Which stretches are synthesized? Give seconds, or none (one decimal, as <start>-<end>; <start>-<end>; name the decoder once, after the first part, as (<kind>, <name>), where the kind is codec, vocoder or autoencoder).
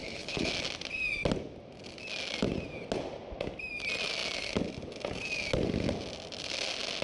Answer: 0.0-0.5 (codec, HILCodec)